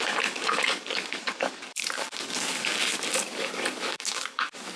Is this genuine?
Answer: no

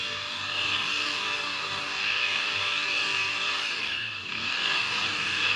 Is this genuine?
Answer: no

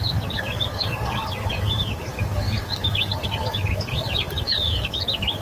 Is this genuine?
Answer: no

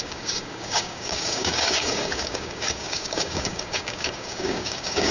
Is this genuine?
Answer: no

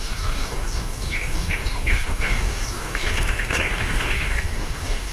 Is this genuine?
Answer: no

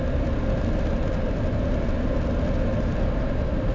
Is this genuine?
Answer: yes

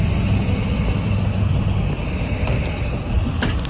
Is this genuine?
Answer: yes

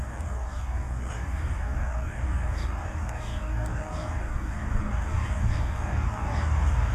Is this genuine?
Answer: no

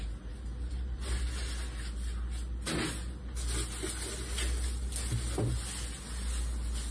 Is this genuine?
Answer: yes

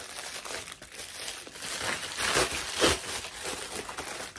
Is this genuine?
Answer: yes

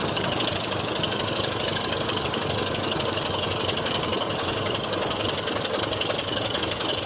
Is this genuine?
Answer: no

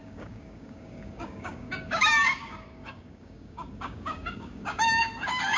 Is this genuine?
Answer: no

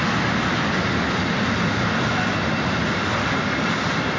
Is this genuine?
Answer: yes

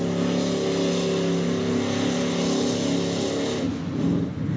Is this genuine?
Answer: yes